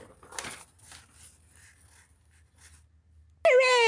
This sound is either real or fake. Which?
real